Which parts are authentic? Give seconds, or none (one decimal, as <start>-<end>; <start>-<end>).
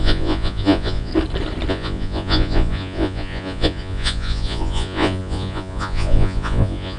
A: 1.1-1.7